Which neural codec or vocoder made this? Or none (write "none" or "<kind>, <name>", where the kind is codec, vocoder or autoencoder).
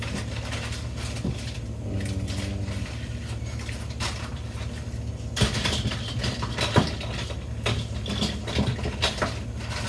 none